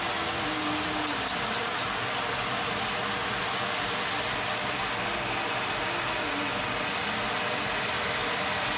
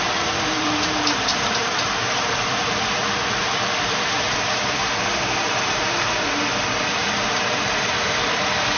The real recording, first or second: first